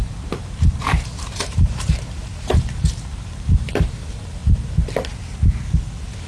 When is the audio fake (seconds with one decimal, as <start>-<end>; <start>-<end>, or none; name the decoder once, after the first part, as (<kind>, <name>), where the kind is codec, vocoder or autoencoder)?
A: 0.0-4.4 (vocoder, BigVGAN v2)